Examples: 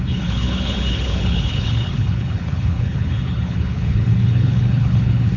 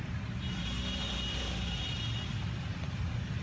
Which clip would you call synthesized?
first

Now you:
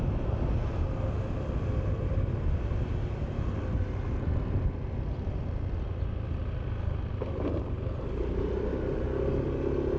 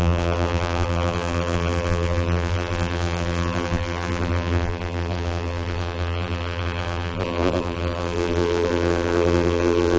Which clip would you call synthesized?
second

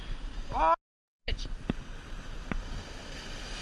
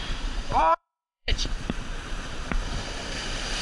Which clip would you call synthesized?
second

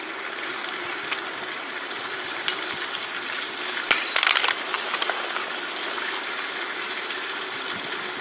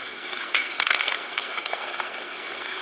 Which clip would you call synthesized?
second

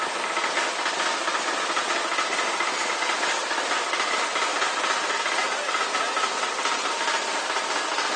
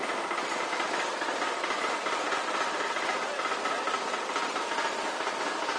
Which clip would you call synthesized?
second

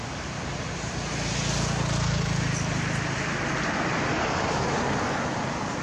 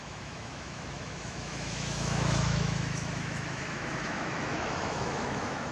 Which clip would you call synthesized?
second